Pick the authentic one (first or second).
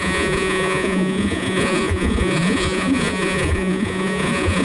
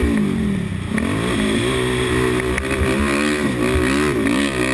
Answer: second